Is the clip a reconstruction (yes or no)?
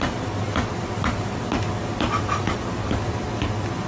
no